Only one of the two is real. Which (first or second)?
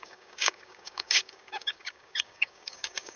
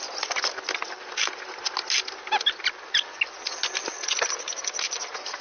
second